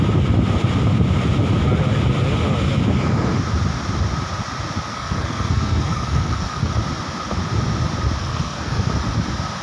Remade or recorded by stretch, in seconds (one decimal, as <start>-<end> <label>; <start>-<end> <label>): 0.0-4.9 recorded; 4.9-6.7 remade; 6.7-8.2 recorded; 8.2-8.9 remade; 8.9-9.6 recorded